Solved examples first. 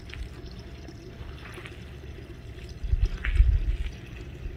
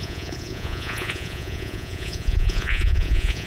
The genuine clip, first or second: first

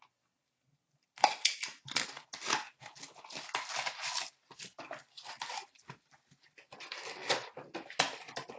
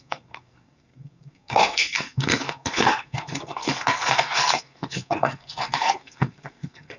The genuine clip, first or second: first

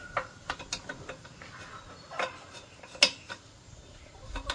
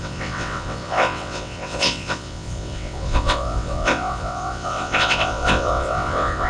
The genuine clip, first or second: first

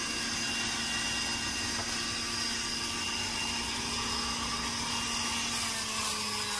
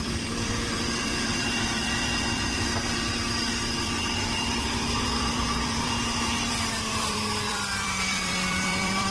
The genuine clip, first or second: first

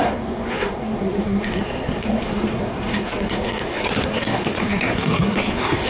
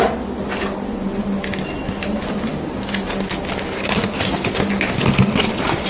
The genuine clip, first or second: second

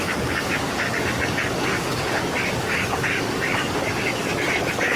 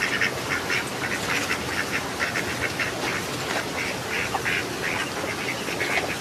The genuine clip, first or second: second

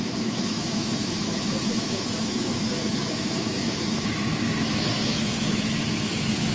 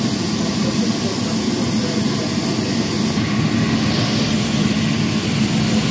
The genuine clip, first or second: second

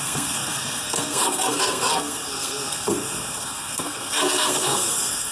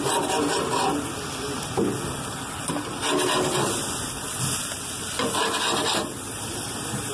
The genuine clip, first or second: second